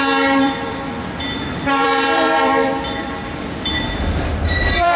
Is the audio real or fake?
fake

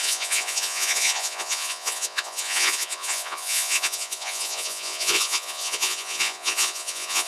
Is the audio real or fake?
fake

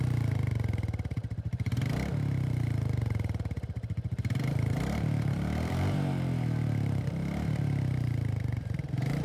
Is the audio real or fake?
fake